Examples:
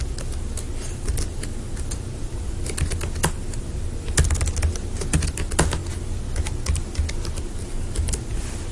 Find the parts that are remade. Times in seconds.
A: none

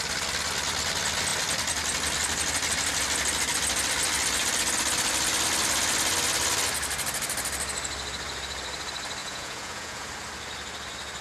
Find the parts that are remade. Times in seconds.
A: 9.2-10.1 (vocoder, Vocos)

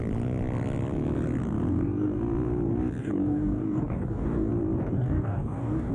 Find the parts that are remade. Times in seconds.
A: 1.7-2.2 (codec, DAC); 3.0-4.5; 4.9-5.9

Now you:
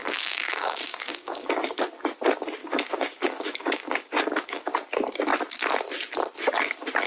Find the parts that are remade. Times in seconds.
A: 0.0-1.8 (codec, DAC); 2.6-4.7

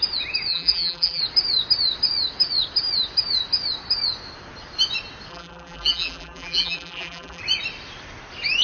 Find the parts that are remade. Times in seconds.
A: 0.5-1.2 (vocoder, BigVGAN v2); 5.3-7.4

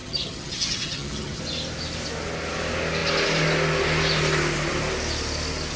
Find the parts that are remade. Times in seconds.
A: 0.0-1.4 (vocoder, HiFi-GAN)

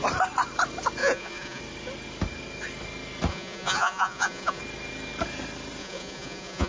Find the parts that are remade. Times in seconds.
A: 1.0-1.6 (vocoder, Vocos); 3.3-4.6; 5.8-6.7